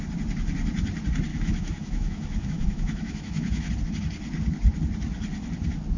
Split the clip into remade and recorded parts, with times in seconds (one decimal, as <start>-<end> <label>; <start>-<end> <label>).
0.0-1.3 recorded; 1.3-3.7 remade; 3.7-6.0 recorded

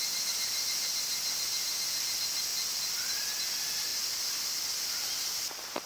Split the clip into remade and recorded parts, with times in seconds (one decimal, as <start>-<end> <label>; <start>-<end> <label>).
0.0-2.5 recorded; 2.5-3.1 remade; 3.1-5.9 recorded